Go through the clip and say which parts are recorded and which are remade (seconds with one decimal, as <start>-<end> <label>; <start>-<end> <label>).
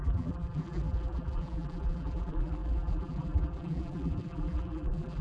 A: 0.0-5.2 remade